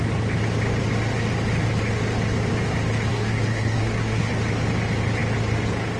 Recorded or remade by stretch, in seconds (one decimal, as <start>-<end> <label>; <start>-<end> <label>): 0.0-3.1 recorded; 3.1-4.3 remade; 4.3-6.0 recorded